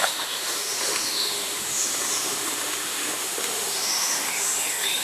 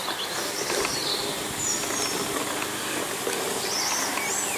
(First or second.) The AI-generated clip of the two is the first